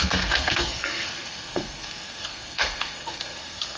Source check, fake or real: fake